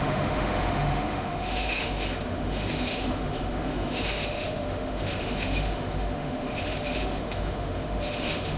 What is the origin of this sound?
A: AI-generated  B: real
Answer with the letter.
A